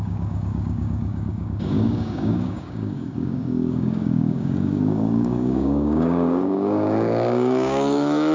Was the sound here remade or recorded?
remade